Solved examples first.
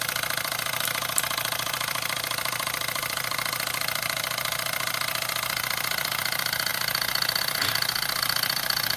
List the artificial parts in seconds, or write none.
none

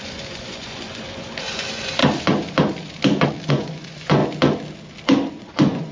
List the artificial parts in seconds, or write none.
0.0-2.0 (vocoder, Vocos); 3.5-4.2; 5.3-5.9

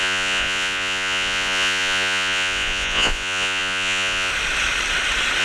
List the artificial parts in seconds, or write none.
0.0-4.3 (vocoder, Vocos)